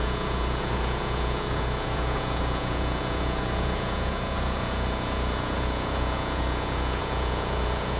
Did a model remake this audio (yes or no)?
yes